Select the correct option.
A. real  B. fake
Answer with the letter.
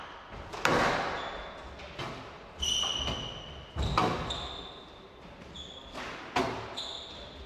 A